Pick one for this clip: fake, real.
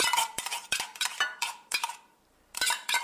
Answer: fake